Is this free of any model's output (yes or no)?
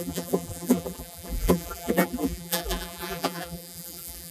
no